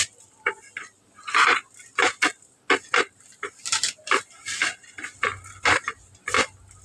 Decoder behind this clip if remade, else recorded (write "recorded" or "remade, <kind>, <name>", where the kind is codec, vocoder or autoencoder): recorded